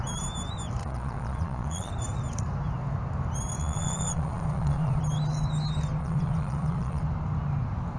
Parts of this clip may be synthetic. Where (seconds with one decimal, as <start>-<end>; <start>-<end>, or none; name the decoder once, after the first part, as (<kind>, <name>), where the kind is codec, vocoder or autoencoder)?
0.8-1.9 (vocoder, Vocos); 3.6-5.0; 6.0-7.0